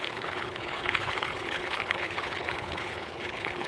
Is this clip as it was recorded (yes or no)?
no